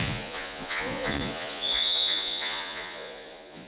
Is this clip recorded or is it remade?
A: remade